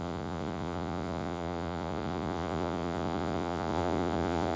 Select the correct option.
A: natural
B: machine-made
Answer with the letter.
B